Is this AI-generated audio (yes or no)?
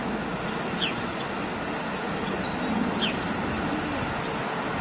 no